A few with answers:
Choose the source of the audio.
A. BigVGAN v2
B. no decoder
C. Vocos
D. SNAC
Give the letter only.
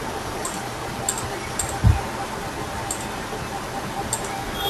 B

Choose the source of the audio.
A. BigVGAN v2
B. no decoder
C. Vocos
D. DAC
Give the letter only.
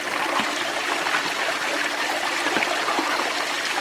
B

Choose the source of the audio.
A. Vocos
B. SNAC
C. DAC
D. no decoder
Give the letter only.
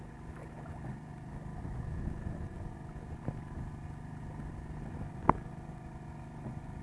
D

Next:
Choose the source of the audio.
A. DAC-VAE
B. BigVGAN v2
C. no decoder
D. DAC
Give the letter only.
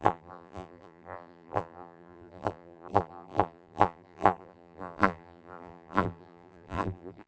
B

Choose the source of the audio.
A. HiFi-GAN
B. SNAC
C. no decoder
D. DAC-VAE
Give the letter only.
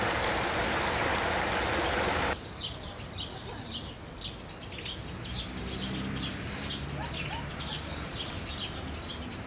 C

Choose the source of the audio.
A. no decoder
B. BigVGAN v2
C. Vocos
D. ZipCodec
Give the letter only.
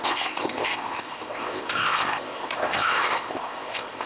D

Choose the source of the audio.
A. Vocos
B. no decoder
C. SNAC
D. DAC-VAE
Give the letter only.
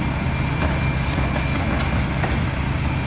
B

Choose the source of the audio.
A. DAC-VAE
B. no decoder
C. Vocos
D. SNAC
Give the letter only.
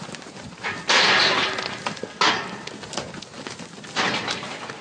B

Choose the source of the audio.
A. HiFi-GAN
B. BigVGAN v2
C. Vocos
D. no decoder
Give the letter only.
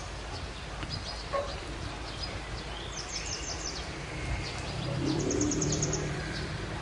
B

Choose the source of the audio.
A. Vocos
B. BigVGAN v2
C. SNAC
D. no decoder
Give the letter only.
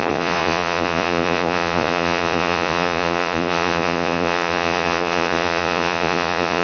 A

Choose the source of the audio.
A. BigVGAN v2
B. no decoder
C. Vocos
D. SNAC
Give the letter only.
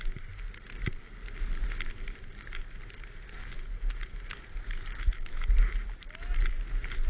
B